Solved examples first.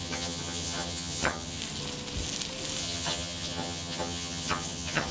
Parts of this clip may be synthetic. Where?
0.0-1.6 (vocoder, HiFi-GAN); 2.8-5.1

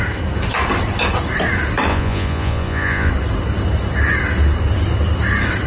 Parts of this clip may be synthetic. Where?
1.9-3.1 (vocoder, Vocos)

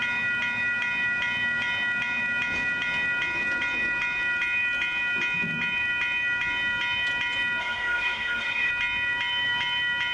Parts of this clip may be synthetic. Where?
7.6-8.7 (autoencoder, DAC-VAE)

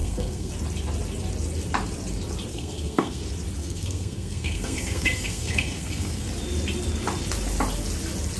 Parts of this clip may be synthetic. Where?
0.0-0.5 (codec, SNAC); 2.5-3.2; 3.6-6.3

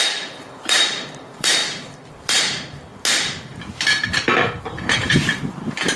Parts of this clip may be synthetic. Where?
0.0-1.6 (vocoder, BigVGAN v2); 2.1-2.9; 4.6-6.0

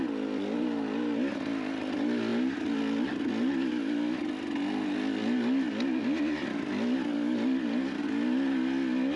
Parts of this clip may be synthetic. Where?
none

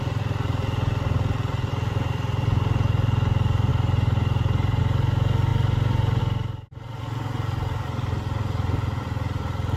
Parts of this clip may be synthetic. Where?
3.7-4.8 (vocoder, BigVGAN v2); 5.5-6.2